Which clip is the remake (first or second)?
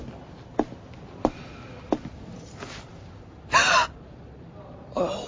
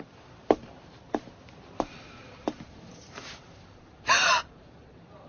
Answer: second